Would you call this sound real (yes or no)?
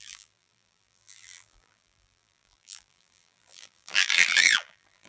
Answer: no